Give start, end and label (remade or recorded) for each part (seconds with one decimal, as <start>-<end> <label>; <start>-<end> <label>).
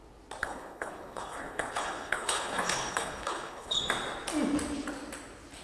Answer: 0.0-0.4 recorded; 0.4-3.8 remade; 3.8-5.6 recorded